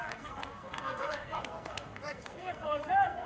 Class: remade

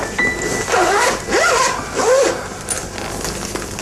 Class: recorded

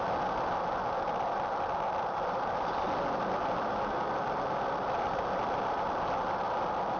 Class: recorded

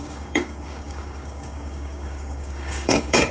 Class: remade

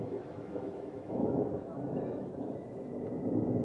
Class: remade